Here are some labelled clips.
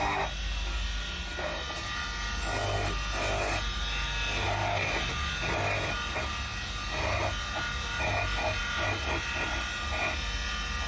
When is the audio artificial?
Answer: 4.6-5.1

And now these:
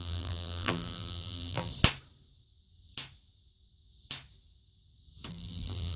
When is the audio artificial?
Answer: 0.0-1.7; 5.3-6.0

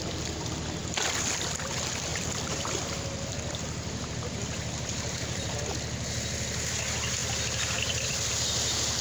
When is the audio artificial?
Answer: 2.1-5.7; 7.2-8.3

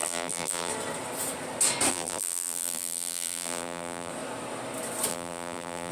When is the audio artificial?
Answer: 0.0-0.7; 1.9-4.1; 5.1-5.9

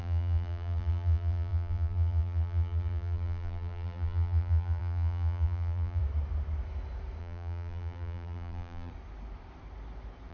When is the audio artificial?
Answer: 0.0-6.0; 7.2-8.9